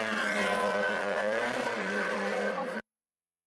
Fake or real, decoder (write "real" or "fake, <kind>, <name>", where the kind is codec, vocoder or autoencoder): fake, vocoder, Vocos